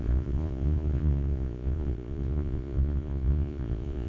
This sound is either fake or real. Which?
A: fake